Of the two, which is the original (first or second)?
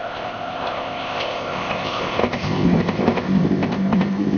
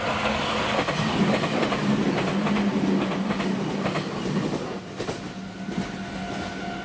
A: second